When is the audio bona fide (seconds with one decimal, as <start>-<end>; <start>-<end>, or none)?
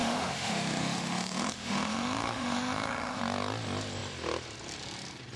3.2-5.4